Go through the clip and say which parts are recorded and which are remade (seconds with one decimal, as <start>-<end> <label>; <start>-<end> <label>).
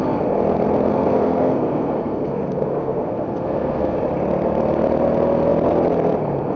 0.0-0.9 recorded; 0.9-4.0 remade; 4.0-6.6 recorded